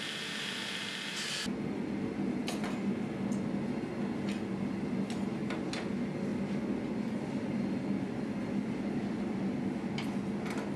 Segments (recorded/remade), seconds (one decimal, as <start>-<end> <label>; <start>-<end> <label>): 0.0-10.8 recorded